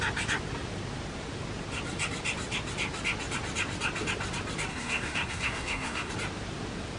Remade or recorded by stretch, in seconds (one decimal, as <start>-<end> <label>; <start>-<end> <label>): 0.0-4.7 recorded; 4.7-6.1 remade; 6.1-7.0 recorded